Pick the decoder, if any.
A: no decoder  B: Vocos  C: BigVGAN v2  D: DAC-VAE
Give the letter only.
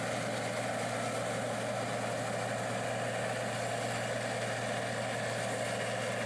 A